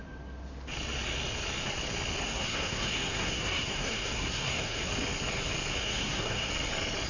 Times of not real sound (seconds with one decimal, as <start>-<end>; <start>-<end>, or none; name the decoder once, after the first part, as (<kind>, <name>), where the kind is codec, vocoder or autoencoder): 2.2-4.9 (codec, SNAC); 5.8-6.5